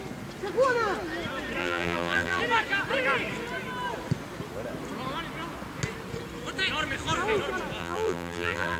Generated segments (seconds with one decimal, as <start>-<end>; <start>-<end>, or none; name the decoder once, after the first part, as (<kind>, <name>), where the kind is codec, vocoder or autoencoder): 1.6-2.4 (vocoder, BigVGAN v2); 7.8-8.8